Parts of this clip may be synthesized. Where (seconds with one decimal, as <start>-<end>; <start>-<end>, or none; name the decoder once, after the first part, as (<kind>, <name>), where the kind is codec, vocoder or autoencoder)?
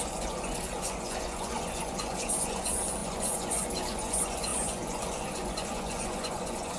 0.0-6.8 (vocoder, Vocos)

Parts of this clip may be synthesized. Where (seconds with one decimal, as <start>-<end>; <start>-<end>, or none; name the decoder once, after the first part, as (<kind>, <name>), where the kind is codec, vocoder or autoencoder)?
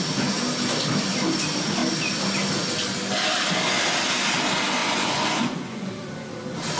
4.8-5.9 (vocoder, Vocos)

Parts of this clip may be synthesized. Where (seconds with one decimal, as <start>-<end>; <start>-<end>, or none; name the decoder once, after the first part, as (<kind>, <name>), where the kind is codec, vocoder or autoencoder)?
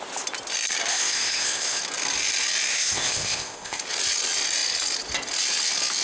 0.9-1.8 (codec, ZipCodec); 2.7-3.8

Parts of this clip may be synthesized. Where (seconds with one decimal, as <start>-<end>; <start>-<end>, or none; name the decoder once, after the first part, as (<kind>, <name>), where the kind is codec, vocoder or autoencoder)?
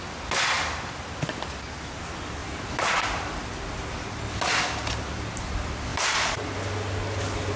2.4-3.6 (vocoder, BigVGAN v2); 5.9-6.5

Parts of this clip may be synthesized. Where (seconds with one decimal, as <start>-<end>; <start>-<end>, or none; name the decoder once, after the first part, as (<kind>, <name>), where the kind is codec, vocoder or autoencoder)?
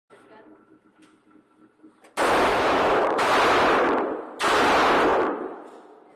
2.5-3.3 (autoencoder, DAC-VAE)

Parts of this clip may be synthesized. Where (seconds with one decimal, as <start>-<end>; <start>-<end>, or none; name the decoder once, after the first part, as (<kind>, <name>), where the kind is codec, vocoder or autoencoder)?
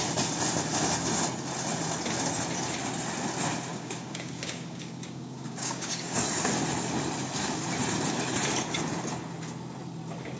3.7-6.2 (codec, DAC)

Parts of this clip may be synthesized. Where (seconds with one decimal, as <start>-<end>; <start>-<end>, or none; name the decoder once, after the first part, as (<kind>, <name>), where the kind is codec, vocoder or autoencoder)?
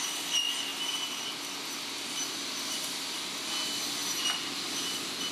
none